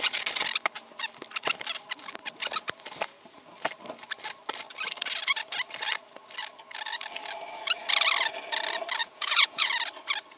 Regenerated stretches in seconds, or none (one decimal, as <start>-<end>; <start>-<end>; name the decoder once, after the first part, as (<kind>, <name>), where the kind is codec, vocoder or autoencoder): 9.0-9.7 (vocoder, Vocos)

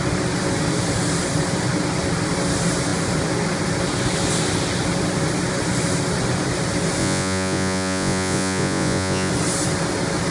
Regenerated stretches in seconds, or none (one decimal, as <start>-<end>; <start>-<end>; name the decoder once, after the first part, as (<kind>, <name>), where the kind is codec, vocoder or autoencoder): 7.0-9.3 (vocoder, Vocos)

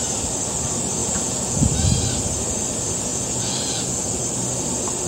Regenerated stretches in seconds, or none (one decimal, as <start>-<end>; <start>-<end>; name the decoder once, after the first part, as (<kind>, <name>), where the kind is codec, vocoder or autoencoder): 1.0-1.7 (vocoder, Vocos); 3.1-4.2

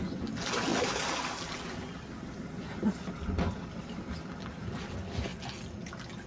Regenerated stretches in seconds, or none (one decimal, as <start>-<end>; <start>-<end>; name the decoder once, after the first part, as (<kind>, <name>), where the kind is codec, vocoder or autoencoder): none

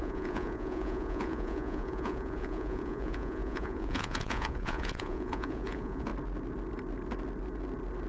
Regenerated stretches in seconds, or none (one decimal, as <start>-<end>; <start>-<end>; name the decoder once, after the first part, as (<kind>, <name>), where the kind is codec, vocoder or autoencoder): 0.0-6.1 (vocoder, Vocos)

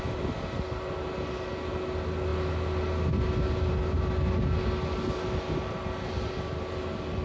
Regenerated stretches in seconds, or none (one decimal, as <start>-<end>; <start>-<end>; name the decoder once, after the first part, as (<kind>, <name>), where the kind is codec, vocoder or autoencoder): none

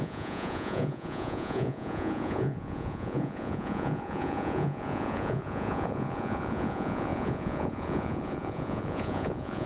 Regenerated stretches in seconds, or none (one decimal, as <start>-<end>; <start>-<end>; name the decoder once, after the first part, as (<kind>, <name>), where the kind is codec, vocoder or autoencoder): 0.0-9.7 (vocoder, Vocos)